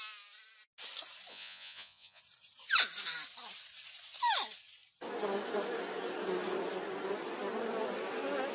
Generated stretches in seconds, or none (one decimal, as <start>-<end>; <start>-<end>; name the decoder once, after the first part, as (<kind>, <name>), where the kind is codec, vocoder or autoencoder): 1.3-2.2 (vocoder, Vocos)